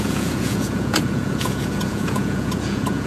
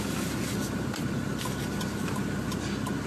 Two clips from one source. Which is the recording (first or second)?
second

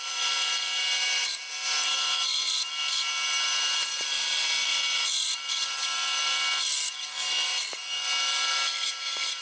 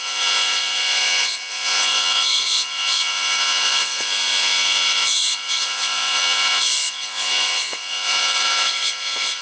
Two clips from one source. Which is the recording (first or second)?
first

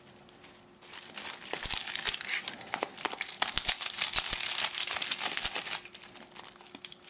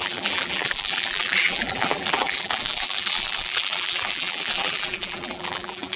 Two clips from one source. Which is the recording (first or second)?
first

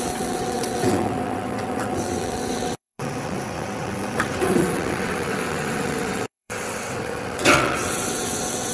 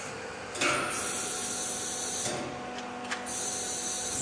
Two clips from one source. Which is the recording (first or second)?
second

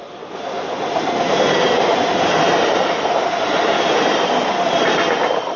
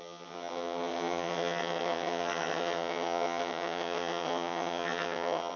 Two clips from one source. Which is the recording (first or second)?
first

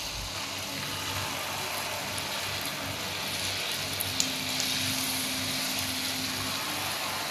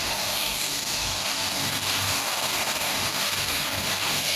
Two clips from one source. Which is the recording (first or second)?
first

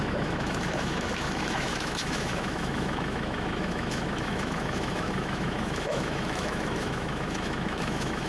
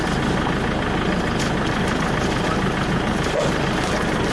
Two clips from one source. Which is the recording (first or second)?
second